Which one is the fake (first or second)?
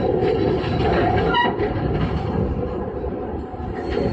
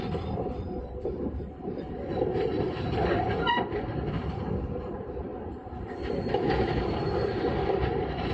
second